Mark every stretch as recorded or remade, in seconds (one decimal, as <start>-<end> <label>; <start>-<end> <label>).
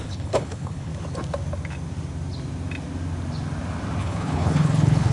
0.0-0.9 remade; 0.9-4.0 recorded; 4.0-5.1 remade